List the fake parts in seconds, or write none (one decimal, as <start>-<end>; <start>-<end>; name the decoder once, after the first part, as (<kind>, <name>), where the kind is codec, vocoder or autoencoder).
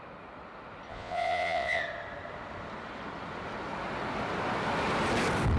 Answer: 0.9-1.8 (vocoder, Vocos)